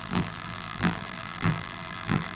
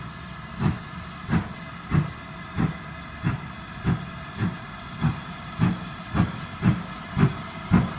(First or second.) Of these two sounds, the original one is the second